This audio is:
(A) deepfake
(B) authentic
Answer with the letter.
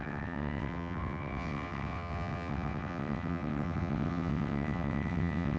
A